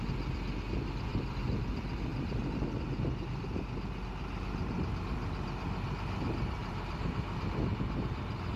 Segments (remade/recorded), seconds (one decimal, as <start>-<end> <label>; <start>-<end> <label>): 0.0-1.1 recorded; 1.1-1.6 remade; 1.6-6.6 recorded; 6.6-7.1 remade; 7.1-8.6 recorded